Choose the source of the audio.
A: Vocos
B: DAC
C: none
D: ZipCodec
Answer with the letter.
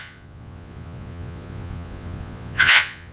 A